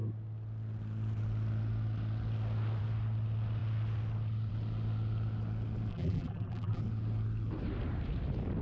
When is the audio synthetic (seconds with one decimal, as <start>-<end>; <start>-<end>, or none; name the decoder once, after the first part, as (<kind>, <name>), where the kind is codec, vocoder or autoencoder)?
5.9-6.8 (vocoder, BigVGAN v2)

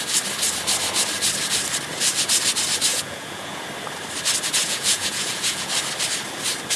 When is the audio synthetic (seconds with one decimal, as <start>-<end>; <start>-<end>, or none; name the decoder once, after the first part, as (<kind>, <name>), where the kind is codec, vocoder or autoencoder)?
2.9-3.6 (vocoder, Vocos); 4.6-5.7